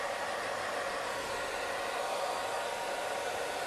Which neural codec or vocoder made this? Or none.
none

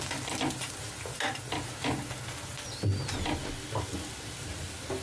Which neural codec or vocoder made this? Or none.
none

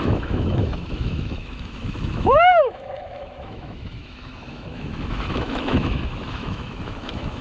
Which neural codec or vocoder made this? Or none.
autoencoder, DAC-VAE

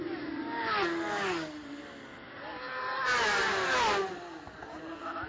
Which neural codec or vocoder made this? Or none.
none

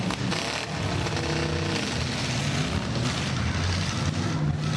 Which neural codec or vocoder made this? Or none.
none